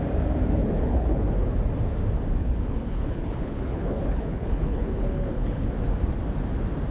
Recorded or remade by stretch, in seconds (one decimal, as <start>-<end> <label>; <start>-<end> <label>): 0.0-0.6 recorded; 0.6-1.3 remade; 1.3-2.4 recorded; 2.4-5.7 remade; 5.7-6.9 recorded